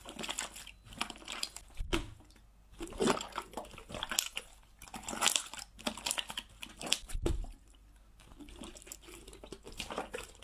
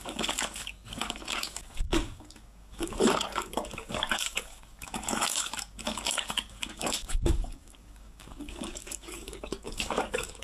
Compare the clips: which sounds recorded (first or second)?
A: first